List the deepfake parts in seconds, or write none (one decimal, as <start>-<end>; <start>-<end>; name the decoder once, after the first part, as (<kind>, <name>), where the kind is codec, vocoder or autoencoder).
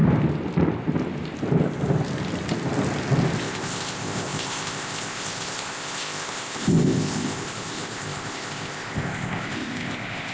3.4-10.3 (codec, ZipCodec)